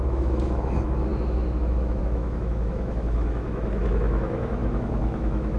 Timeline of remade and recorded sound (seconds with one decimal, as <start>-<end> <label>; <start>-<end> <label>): 0.0-5.6 remade